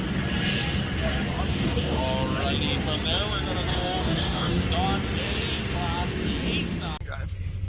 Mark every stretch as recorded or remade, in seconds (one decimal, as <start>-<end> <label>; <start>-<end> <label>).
0.0-1.5 recorded; 1.5-2.0 remade; 2.0-3.7 recorded; 3.7-4.5 remade; 4.5-7.7 recorded

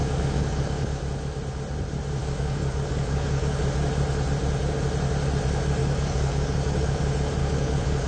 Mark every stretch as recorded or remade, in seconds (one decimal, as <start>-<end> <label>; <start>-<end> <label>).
0.0-1.0 remade; 1.0-2.2 recorded; 2.2-3.6 remade; 3.6-5.8 recorded; 5.8-7.0 remade; 7.0-7.4 recorded; 7.4-8.1 remade

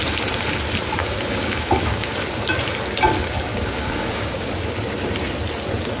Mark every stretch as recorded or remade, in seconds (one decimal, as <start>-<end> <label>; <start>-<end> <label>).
0.0-1.0 recorded; 1.0-2.1 remade; 2.1-3.5 recorded; 3.5-4.5 remade; 4.5-6.0 recorded